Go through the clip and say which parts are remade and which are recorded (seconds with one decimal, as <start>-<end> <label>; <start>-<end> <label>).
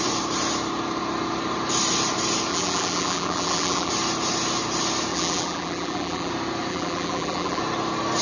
0.0-2.5 recorded; 2.5-3.9 remade; 3.9-5.1 recorded; 5.1-6.3 remade; 6.3-6.7 recorded; 6.7-7.6 remade; 7.6-8.2 recorded